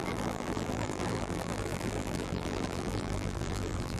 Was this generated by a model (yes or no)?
yes